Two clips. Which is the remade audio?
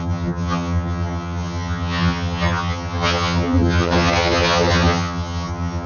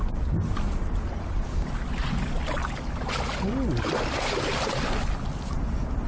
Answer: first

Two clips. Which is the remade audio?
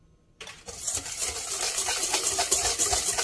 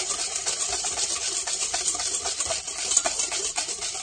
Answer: second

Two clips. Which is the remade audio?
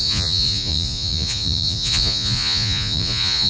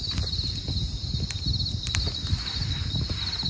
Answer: first